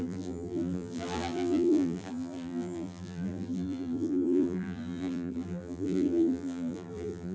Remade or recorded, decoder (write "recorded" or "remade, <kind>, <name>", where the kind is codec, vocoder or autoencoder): remade, vocoder, BigVGAN v2